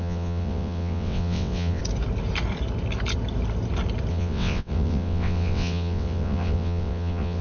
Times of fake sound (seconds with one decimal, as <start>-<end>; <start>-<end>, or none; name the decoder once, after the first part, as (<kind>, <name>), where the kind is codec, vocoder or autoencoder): 0.0-1.8 (vocoder, WaveNeXt); 4.1-7.4